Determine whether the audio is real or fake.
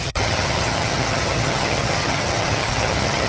fake